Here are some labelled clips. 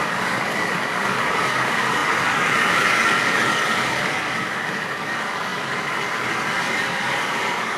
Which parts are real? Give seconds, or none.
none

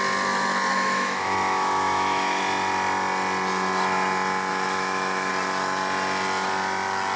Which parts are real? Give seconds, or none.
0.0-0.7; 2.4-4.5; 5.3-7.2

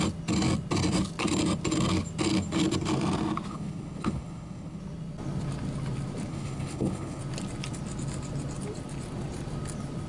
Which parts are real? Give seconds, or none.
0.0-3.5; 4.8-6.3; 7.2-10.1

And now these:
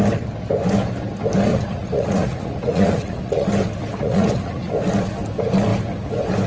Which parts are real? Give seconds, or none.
0.0-1.5; 3.5-4.0; 4.7-6.5